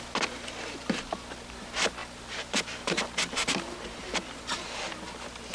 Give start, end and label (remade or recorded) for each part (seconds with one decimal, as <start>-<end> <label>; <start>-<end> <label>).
0.0-2.0 recorded; 2.0-4.9 remade; 4.9-5.5 recorded